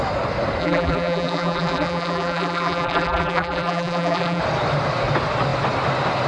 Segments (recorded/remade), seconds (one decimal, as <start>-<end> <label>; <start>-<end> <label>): 0.0-0.6 recorded; 0.6-4.4 remade; 4.4-6.3 recorded